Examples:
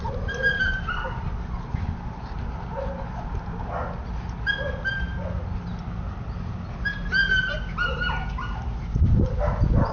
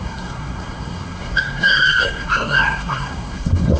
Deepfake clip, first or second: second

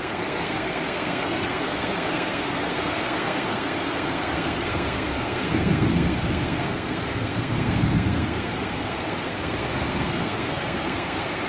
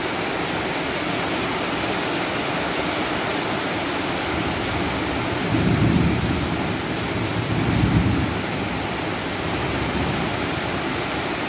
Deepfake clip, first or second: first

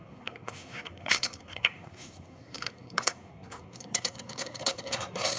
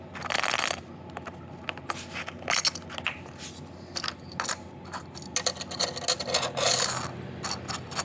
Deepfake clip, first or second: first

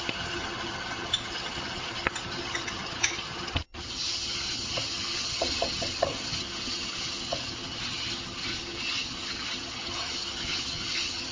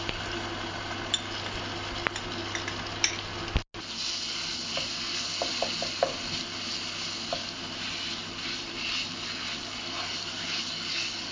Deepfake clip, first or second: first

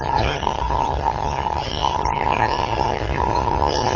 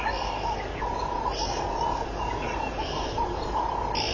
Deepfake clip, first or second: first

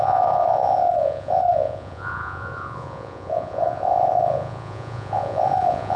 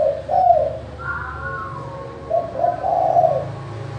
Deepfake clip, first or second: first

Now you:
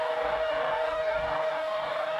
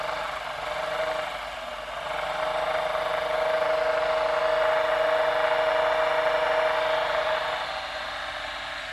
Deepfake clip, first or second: first